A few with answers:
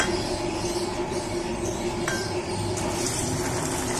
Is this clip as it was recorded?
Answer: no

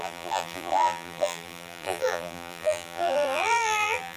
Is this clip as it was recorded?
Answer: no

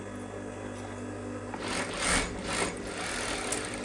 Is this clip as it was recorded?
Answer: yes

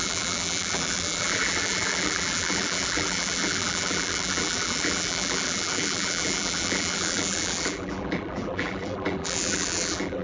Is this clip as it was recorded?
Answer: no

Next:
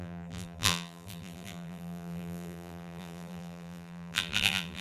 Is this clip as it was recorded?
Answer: no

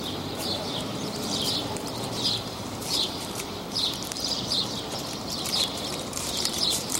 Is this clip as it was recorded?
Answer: no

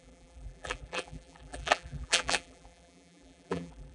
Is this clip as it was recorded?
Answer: no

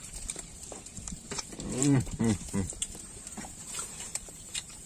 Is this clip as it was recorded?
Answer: no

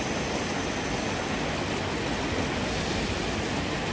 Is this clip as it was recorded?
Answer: yes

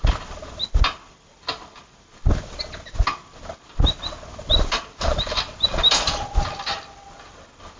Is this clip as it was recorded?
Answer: yes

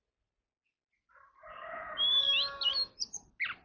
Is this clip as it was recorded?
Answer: yes